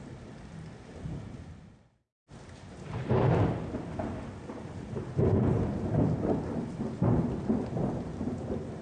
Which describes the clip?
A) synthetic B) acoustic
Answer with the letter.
A